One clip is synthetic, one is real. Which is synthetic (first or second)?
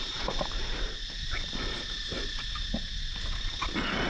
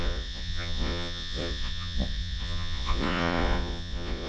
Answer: second